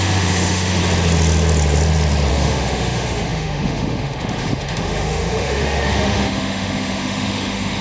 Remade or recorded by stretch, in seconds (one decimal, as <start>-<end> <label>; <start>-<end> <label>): 0.0-0.8 remade; 0.8-2.3 recorded; 2.3-7.8 remade